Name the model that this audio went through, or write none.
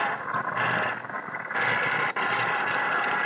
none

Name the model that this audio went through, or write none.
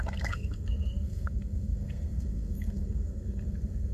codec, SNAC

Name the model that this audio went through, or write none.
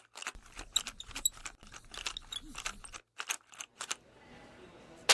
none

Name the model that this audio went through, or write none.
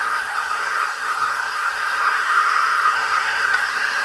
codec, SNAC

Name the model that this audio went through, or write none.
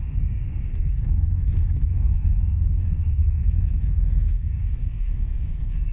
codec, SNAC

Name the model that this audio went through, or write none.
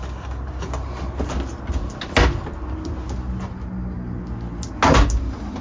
none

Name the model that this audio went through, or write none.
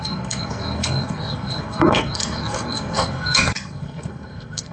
codec, SNAC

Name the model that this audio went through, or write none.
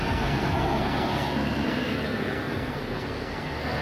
codec, SNAC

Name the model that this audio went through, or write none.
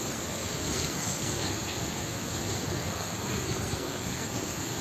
codec, SNAC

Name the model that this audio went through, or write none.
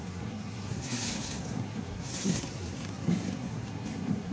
codec, SNAC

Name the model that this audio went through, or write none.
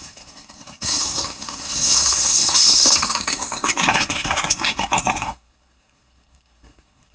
codec, SNAC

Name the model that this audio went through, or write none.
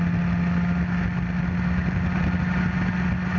none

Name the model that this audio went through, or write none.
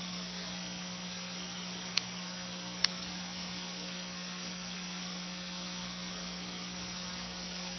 codec, SNAC